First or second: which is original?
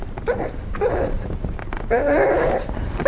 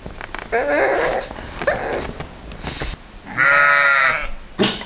second